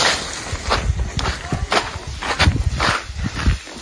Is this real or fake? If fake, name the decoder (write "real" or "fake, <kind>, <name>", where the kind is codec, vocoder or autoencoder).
real